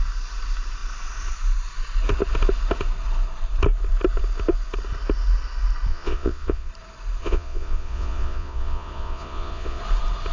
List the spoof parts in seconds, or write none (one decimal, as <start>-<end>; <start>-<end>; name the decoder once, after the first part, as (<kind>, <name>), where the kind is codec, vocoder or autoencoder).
5.9-6.7 (vocoder, Vocos); 7.2-9.8